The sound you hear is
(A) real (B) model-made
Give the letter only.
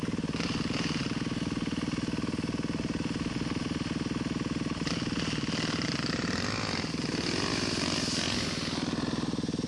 A